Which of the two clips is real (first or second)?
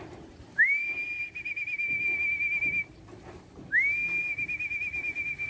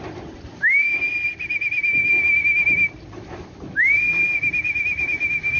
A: first